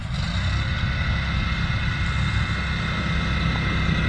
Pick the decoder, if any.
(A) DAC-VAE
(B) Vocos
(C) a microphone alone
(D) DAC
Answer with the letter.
C